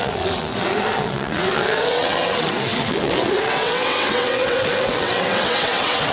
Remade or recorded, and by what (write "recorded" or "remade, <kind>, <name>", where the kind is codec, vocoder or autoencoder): remade, vocoder, WaveNeXt